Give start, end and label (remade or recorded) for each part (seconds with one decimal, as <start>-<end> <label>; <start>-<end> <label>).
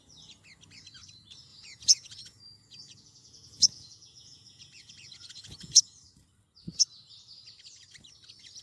0.0-1.5 recorded; 1.5-5.8 remade; 5.8-8.6 recorded